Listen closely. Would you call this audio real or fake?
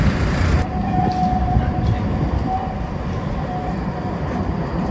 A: real